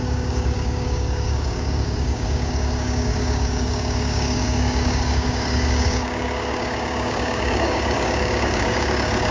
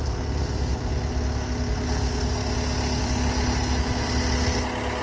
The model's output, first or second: first